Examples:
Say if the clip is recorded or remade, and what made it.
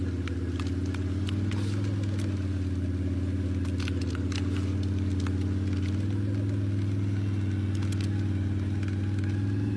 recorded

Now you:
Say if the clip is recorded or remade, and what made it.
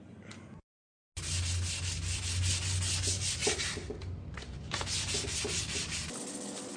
recorded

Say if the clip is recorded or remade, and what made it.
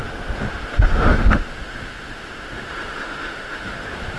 remade, autoencoder, DAC-VAE